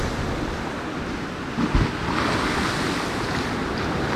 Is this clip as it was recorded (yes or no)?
yes